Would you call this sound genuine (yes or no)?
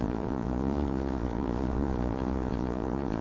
no